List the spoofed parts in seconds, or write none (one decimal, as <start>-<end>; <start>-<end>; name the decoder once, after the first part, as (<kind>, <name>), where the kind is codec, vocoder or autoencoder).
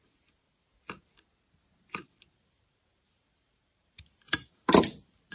0.0-0.7 (vocoder, BigVGAN v2); 2.0-5.3